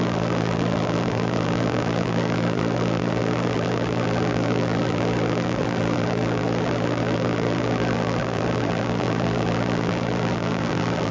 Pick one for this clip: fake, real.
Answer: fake